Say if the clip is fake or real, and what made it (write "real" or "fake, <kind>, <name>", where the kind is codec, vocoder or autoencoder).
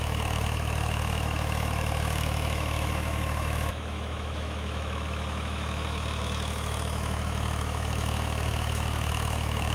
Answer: fake, autoencoder, DAC-VAE